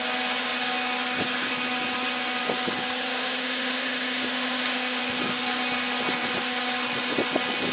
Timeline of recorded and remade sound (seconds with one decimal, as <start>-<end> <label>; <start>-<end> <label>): 0.0-3.1 recorded; 3.1-5.0 remade; 5.0-7.7 recorded